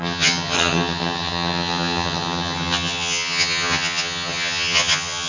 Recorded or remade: remade